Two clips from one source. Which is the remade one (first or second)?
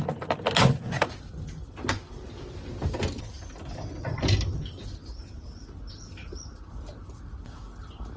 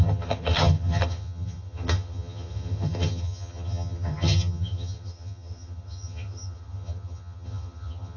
second